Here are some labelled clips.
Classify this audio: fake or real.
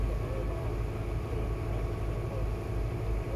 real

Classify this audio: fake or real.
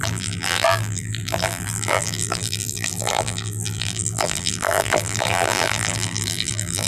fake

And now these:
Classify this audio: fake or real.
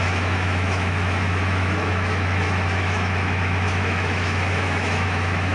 fake